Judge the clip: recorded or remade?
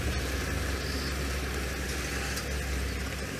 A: recorded